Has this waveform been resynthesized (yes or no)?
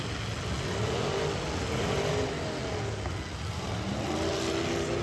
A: no